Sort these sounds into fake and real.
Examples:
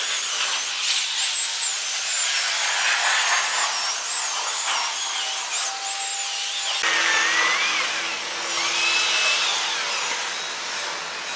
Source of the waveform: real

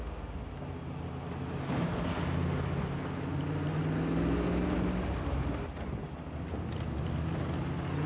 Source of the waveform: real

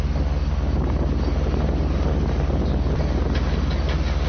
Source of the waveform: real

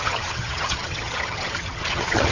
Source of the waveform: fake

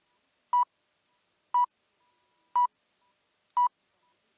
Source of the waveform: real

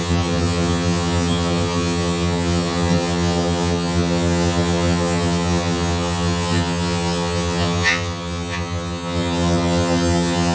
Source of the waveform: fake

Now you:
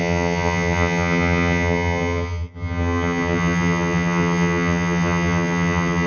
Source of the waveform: fake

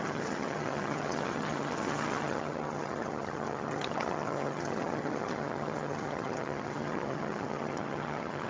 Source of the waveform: fake